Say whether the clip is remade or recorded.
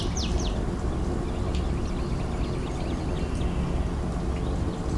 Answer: recorded